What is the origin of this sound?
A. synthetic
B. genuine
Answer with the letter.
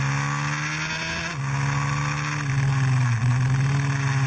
B